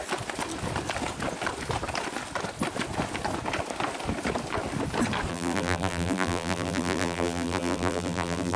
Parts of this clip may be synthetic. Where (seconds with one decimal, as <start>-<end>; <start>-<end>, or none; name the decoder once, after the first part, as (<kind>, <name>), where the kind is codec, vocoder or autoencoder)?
5.3-8.6 (vocoder, BigVGAN v2)